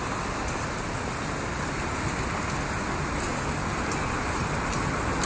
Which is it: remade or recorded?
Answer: recorded